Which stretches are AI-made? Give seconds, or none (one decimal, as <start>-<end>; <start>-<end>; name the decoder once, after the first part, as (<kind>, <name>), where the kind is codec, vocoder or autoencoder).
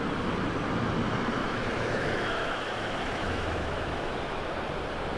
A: 1.4-4.5 (autoencoder, DAC-VAE)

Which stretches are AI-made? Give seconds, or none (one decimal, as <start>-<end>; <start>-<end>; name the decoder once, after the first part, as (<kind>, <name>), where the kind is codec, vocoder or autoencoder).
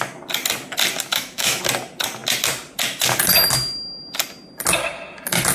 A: 1.1-1.6 (autoencoder, DAC-VAE)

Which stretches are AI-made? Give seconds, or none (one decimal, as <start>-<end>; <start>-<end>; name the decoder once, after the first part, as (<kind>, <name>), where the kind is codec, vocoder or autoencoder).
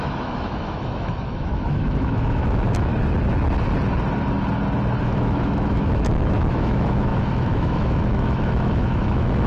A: 0.0-2.9 (autoencoder, DAC-VAE); 5.0-9.5